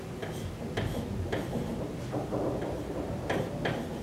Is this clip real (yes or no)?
yes